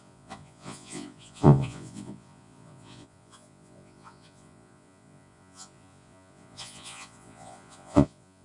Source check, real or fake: fake